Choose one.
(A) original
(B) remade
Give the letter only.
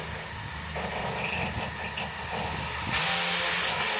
A